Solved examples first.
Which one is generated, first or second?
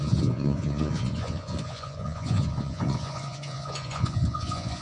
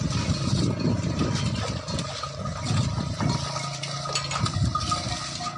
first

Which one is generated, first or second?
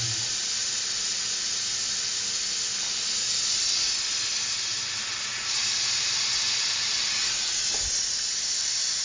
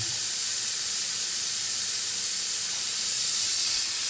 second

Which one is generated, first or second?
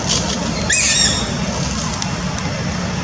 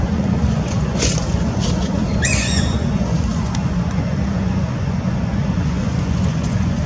second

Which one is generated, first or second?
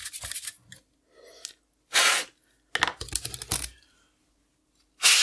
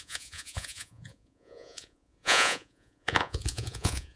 second